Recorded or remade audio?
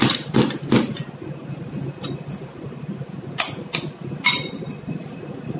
recorded